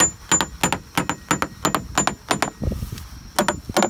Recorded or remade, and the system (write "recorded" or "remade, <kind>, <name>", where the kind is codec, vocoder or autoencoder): recorded